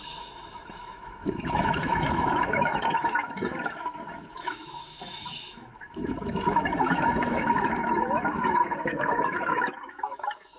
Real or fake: fake